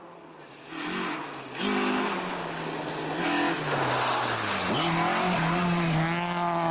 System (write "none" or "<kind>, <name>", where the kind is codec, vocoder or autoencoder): none